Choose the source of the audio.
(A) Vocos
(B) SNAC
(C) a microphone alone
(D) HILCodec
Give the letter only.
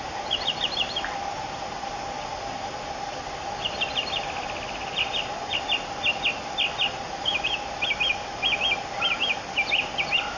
C